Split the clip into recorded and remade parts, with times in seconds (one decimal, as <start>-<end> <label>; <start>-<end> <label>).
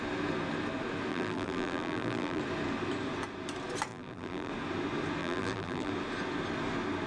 0.0-1.1 recorded; 1.1-2.4 remade; 2.4-3.9 recorded; 3.9-4.5 remade; 4.5-5.2 recorded; 5.2-5.9 remade; 5.9-7.1 recorded